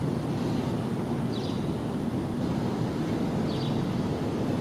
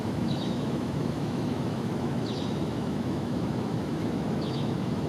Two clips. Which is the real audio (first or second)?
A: first